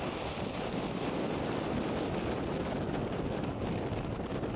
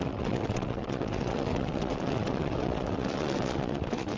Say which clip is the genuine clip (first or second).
first